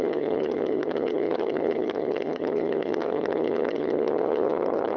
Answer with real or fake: fake